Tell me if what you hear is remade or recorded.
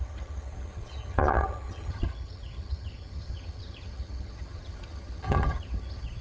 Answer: remade